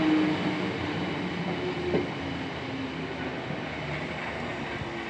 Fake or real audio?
real